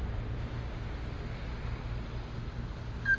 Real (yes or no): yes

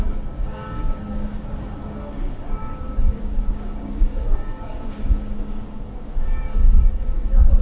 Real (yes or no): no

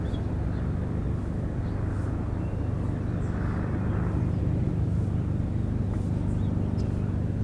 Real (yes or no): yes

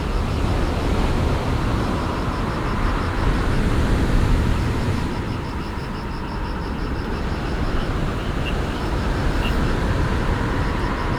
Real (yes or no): yes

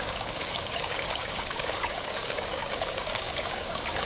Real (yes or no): no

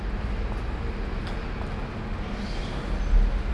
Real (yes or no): yes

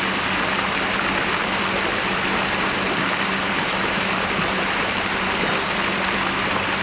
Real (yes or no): yes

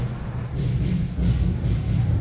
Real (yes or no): yes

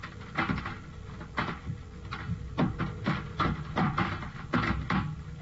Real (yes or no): yes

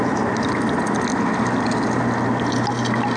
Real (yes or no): yes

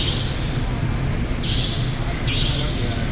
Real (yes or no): yes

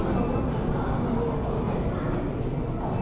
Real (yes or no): yes